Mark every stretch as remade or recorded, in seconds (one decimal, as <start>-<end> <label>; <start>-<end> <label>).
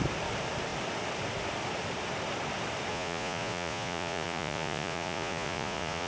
0.0-2.9 recorded; 2.9-6.1 remade